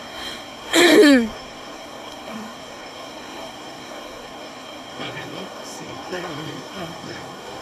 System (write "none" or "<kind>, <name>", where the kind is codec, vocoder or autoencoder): codec, SNAC